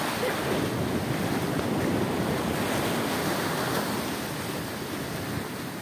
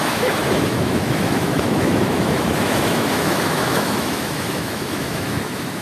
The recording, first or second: first